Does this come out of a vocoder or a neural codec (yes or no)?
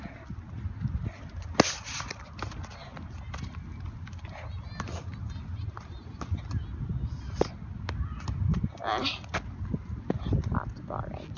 no